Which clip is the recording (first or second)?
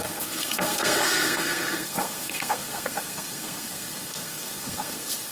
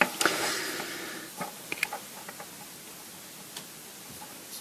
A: second